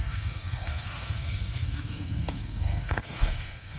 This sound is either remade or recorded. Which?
remade